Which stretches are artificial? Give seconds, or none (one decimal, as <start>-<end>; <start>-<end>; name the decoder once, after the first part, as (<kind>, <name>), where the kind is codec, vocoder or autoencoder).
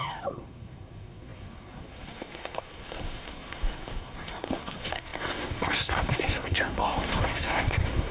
0.0-8.1 (codec, SNAC)